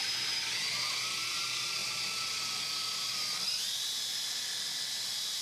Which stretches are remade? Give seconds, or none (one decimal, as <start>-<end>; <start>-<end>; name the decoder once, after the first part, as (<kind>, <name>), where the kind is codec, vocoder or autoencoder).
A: none